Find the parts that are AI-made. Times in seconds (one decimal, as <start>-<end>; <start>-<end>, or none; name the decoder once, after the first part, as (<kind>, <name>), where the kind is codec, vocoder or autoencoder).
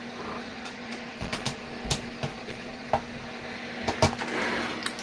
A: 0.4-1.6 (vocoder, Vocos); 2.3-2.9